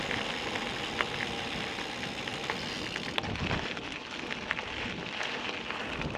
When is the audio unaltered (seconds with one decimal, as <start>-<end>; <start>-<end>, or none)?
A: 0.0-6.2